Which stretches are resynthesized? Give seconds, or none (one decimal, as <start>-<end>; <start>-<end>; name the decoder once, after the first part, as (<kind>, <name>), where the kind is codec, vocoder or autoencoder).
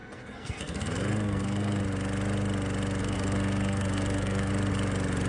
0.0-1.8 (codec, SNAC); 3.0-4.5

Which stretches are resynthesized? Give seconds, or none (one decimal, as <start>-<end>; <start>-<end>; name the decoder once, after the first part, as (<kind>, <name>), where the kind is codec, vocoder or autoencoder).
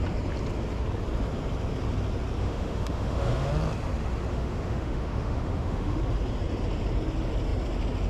2.4-3.5 (autoencoder, DAC-VAE); 4.3-6.0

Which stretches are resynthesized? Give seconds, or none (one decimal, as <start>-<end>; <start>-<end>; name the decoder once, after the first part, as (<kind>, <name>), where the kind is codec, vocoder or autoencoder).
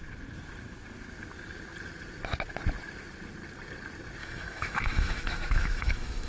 4.2-6.3 (autoencoder, DAC-VAE)